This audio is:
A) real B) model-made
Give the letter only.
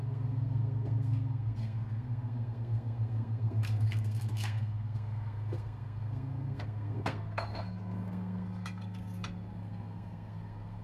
B